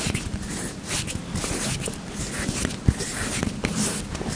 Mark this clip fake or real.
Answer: real